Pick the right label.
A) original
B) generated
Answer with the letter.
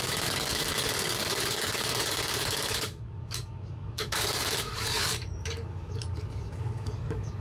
B